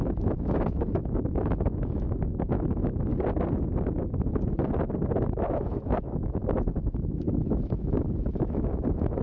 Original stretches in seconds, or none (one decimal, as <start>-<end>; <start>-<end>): 3.1-5.0